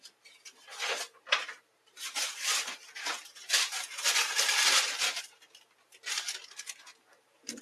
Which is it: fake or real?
fake